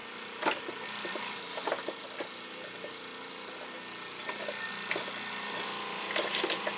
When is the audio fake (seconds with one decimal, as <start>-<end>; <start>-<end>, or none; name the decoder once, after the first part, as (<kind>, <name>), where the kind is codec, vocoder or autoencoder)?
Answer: 0.0-2.0 (vocoder, BigVGAN v2)